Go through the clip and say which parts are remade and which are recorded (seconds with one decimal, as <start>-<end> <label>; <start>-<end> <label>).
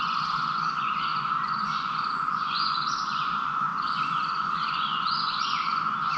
0.0-6.2 remade